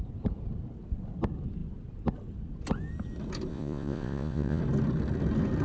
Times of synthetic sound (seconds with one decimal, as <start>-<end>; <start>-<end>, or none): 3.5-4.6